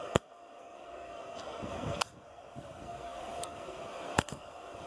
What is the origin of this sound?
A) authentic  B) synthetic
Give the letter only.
B